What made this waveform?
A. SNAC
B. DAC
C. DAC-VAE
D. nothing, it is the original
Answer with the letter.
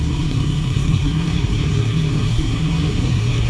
A